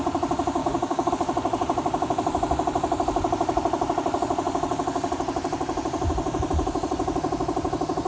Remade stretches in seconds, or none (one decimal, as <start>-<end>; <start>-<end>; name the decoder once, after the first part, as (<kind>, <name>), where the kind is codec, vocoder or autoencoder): 0.6-1.1 (codec, DAC)